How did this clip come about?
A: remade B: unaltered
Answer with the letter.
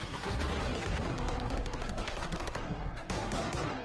A